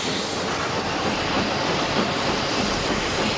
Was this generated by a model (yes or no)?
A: no